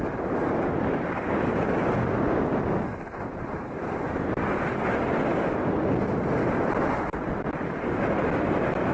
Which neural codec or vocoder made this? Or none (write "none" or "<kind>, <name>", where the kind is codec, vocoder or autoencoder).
none